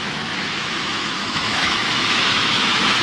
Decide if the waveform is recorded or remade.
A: remade